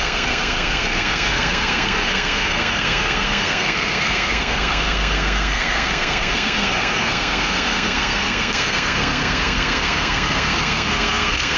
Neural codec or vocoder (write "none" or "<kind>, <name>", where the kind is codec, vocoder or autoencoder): codec, SNAC